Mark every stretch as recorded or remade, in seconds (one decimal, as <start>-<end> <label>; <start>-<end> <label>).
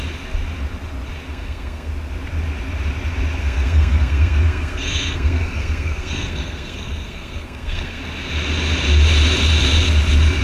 0.0-1.3 recorded; 1.3-1.9 remade; 1.9-3.4 recorded; 3.4-8.0 remade; 8.0-10.4 recorded